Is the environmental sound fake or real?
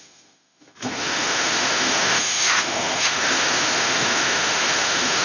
fake